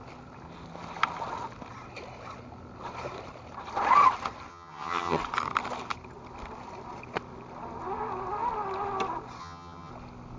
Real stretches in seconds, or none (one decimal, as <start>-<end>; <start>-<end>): 0.0-4.5; 5.2-9.4; 9.9-10.4